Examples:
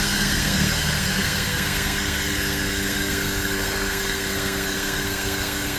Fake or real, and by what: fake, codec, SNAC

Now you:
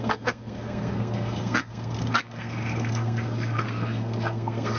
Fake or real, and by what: fake, codec, SNAC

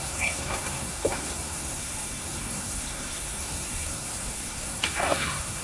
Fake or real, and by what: fake, codec, SNAC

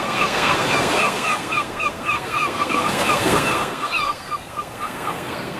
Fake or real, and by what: fake, codec, SNAC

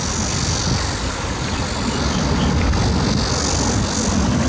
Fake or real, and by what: real